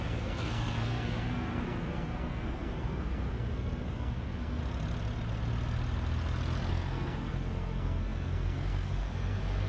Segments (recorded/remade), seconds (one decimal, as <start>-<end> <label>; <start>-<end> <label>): 0.0-4.6 remade; 4.6-6.7 recorded; 6.7-9.7 remade